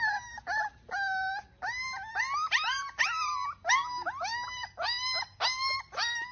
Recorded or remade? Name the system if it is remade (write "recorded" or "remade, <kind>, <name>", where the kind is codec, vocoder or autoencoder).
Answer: recorded